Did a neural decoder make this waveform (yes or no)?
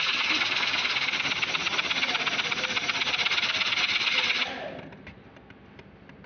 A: no